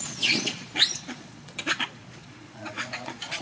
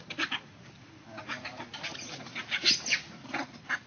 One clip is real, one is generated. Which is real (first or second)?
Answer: second